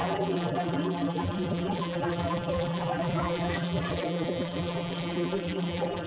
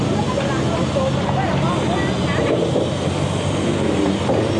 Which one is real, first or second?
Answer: second